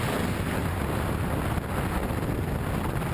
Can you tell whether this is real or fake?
real